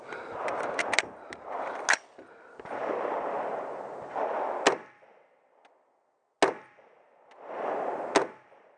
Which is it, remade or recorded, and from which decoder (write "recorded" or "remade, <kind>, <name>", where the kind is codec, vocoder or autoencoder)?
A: recorded